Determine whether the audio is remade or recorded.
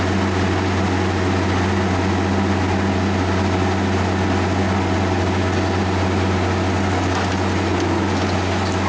recorded